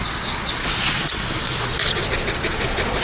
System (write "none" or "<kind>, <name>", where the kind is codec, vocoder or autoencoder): vocoder, Vocos